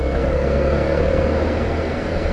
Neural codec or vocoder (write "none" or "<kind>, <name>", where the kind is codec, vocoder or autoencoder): codec, SNAC